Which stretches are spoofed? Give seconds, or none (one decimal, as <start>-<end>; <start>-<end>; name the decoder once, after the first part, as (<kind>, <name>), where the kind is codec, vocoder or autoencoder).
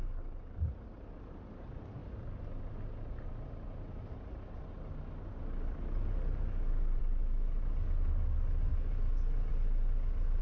none